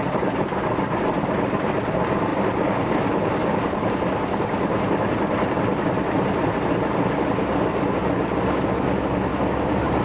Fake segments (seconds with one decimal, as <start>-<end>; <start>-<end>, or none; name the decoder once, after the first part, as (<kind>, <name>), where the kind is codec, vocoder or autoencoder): 2.3-3.0 (vocoder, BigVGAN v2); 3.4-6.5; 9.3-10.0